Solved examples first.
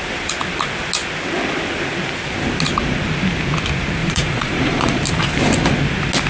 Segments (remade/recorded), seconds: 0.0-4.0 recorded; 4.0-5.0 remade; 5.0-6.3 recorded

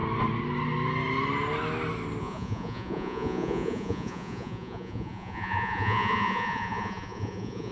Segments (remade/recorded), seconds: 0.0-2.2 recorded; 2.2-7.7 remade

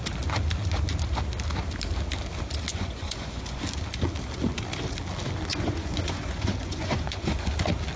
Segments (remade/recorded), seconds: 0.0-2.7 recorded; 2.7-3.6 remade; 3.6-5.5 recorded; 5.5-7.5 remade; 7.5-8.0 recorded

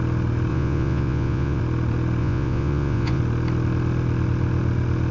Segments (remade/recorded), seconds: 0.0-0.5 recorded; 0.5-1.6 remade; 1.6-2.2 recorded; 2.2-3.2 remade; 3.2-5.1 recorded

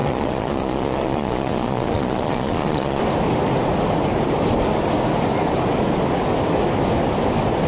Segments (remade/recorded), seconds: 0.0-3.0 remade; 3.0-7.7 recorded

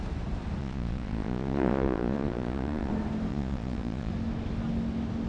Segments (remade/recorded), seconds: 0.0-0.6 recorded; 0.6-2.9 remade; 2.9-3.3 recorded; 3.3-4.1 remade; 4.1-5.3 recorded